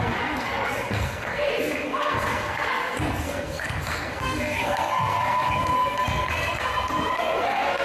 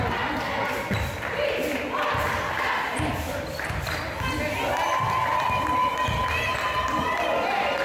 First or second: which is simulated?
first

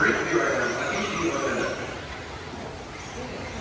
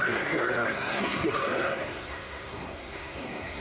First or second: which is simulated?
second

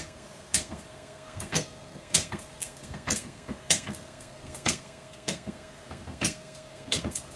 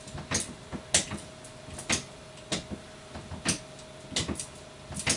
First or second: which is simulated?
first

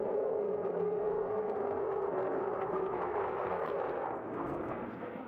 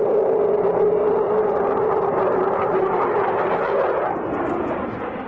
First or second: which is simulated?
first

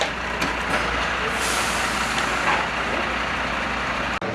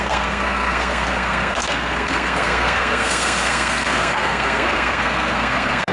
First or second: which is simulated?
second